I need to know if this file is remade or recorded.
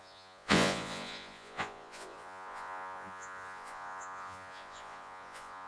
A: remade